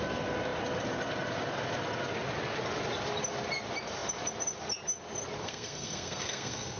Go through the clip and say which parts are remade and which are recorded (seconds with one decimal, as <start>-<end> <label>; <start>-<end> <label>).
0.0-5.4 recorded; 5.4-6.8 remade